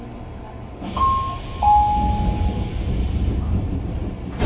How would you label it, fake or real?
real